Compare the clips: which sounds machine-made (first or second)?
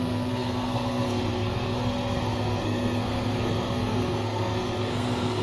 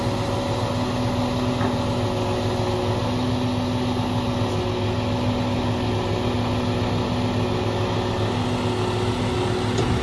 first